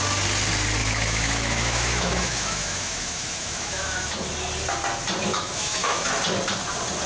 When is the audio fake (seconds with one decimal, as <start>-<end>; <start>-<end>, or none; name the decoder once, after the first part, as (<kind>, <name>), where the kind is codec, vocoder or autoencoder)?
0.8-4.2 (autoencoder, DAC-VAE); 5.3-6.1